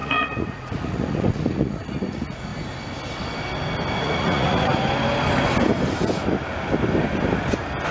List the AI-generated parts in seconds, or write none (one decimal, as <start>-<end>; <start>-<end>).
0.0-2.5; 4.0-4.7